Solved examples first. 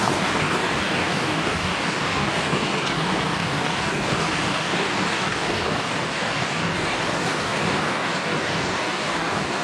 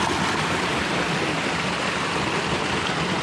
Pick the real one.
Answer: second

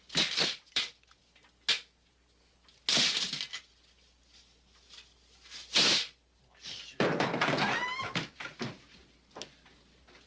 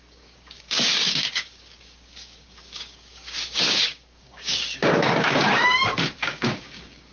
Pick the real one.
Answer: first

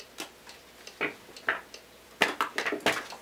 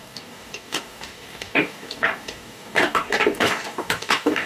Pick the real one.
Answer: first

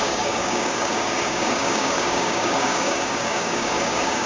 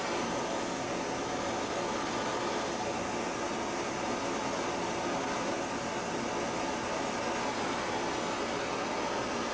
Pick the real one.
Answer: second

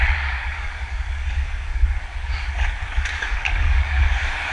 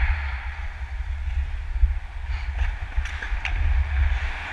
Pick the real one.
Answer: second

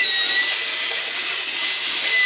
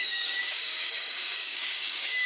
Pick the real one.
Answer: first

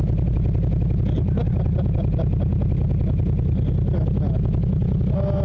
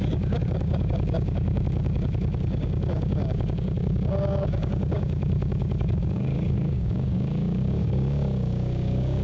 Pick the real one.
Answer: first